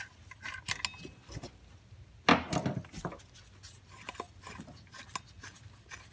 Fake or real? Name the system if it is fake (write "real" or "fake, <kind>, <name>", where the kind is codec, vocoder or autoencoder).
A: real